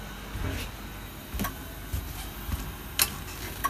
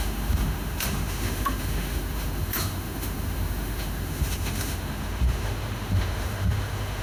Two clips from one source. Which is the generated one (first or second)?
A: second